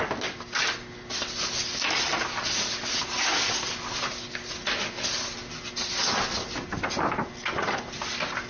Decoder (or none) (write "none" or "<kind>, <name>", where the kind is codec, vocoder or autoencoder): none